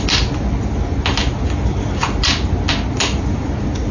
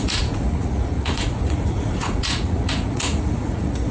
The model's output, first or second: second